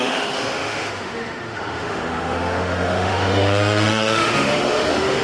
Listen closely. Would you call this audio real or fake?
fake